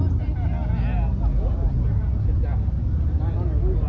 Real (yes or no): yes